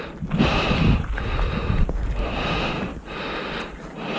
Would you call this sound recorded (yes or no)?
yes